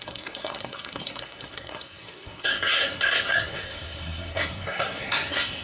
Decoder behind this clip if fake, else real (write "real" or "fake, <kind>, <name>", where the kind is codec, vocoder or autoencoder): fake, codec, SNAC